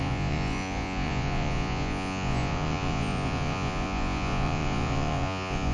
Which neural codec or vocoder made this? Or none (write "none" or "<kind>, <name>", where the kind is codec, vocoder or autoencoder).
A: vocoder, Vocos